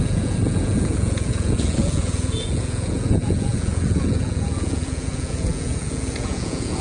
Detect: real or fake fake